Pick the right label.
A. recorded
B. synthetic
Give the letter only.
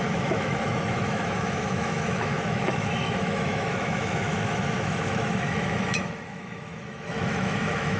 B